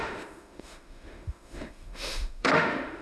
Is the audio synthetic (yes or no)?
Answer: yes